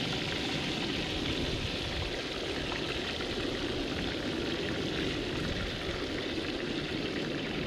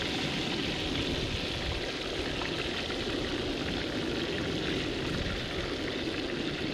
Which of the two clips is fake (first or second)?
first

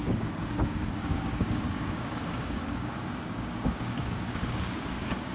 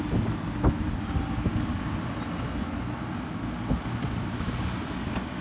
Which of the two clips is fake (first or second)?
first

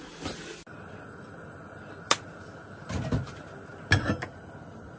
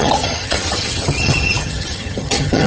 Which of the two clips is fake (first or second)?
second